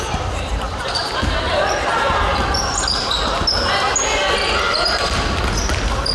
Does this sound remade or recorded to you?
recorded